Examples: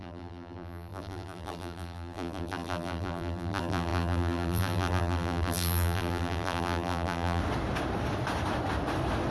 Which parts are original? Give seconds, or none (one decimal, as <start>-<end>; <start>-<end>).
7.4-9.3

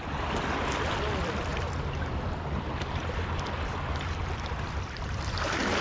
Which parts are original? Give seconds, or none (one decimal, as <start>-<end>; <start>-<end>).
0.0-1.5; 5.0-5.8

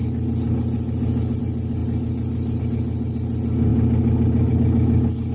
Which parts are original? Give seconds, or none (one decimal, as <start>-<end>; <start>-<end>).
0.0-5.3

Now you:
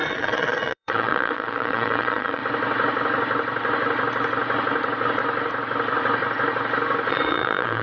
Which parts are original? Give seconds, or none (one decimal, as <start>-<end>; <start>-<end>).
2.4-7.1